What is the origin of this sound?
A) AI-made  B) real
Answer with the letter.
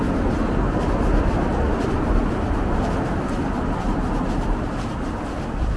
B